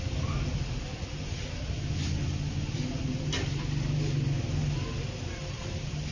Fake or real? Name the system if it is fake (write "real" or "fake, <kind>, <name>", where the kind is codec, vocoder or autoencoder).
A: real